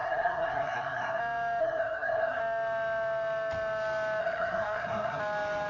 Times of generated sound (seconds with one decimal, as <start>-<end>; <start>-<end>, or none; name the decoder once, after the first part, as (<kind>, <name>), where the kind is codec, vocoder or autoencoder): 0.0-1.2 (codec, SNAC); 1.6-2.4; 4.2-5.2

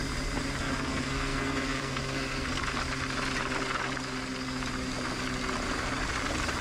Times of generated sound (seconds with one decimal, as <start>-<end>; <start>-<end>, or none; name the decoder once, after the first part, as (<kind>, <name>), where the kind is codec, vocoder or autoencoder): 0.6-2.6 (codec, SNAC)